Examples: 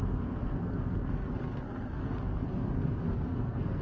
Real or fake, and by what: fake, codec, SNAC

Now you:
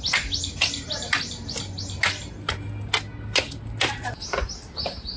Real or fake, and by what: real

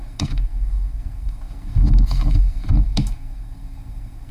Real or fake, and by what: fake, codec, SNAC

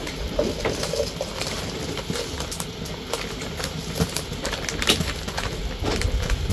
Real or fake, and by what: real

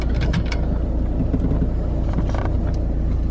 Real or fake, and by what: real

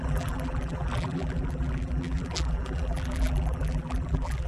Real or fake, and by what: fake, vocoder, BigVGAN v2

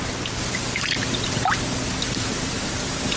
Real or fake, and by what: real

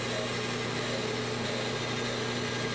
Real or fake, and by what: real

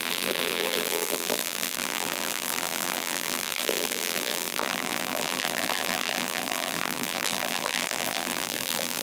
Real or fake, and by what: fake, vocoder, BigVGAN v2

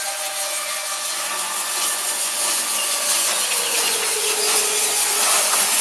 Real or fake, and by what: fake, vocoder, Vocos